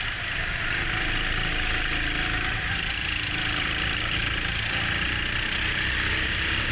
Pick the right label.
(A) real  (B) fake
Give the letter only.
A